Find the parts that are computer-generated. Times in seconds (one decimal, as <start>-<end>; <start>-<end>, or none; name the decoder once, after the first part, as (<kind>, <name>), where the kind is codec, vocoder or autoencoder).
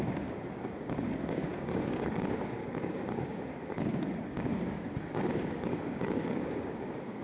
0.0-7.2 (codec, DAC)